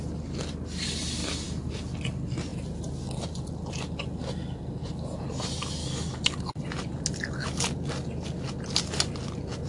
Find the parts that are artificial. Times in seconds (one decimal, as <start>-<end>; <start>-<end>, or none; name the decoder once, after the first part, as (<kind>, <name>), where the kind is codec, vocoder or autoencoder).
5.8-6.4 (codec, DAC)